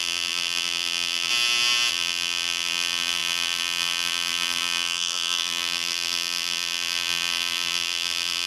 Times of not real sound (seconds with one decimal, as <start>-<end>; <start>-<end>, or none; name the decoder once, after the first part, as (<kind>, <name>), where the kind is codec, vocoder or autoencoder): 0.0-1.3 (vocoder, BigVGAN v2); 1.9-8.5